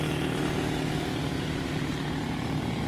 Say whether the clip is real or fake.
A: real